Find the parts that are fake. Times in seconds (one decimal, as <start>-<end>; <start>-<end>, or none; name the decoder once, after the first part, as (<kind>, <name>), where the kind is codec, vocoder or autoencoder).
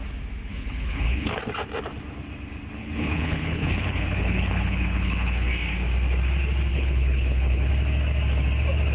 0.5-1.4 (codec, HILCodec); 2.8-5.5; 6.7-7.7